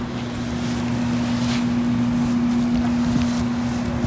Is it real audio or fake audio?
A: real